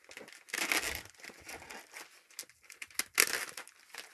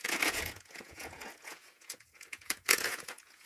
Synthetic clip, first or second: second